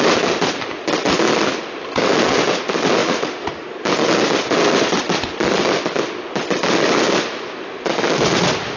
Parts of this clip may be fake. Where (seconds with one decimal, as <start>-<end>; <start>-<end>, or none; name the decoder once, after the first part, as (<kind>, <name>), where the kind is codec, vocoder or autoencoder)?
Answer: 3.0-3.8 (vocoder, Vocos)